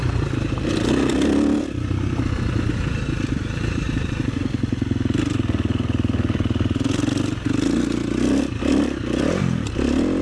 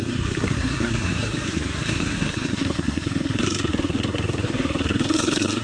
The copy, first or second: second